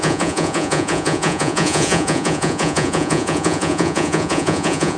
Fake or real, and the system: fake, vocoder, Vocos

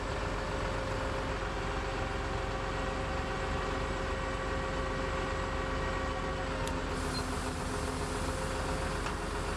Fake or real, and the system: real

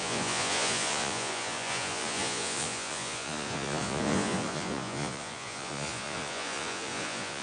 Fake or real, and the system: fake, vocoder, Vocos